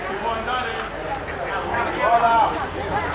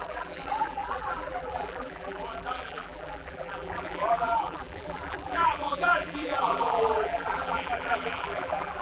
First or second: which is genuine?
first